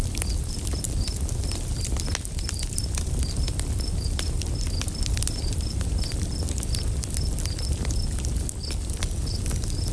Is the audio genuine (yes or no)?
yes